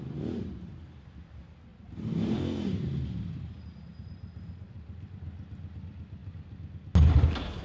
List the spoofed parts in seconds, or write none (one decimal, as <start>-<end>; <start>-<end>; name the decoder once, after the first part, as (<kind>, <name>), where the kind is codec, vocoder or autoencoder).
1.7-5.1 (vocoder, BigVGAN v2); 6.2-6.7